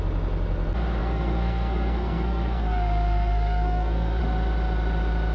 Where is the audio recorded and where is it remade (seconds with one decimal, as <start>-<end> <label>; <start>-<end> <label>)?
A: 0.0-1.0 recorded; 1.0-4.2 remade; 4.2-5.3 recorded